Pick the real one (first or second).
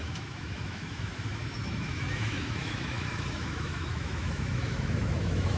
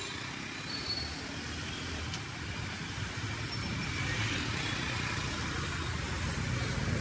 second